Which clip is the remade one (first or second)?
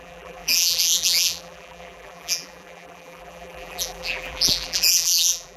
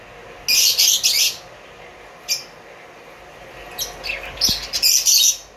first